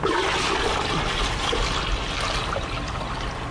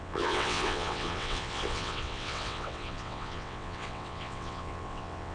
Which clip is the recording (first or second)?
first